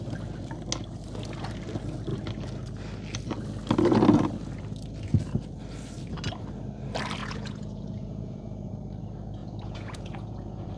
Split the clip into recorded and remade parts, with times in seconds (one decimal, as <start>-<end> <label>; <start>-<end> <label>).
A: 0.0-7.2 recorded; 7.2-8.7 remade; 8.7-9.4 recorded; 9.4-10.8 remade